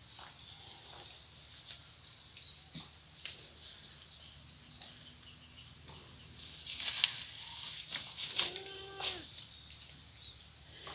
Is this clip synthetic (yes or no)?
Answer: no